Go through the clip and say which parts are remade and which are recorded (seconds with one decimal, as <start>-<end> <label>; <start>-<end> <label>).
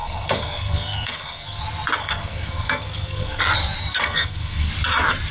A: 0.0-1.6 remade; 1.6-2.0 recorded; 2.0-3.4 remade; 3.4-3.8 recorded; 3.8-4.7 remade; 4.7-5.3 recorded